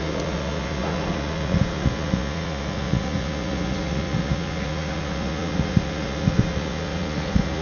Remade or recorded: remade